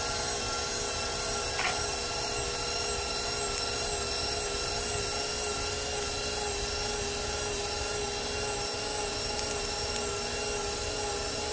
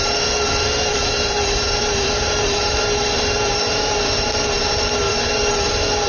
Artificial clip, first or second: second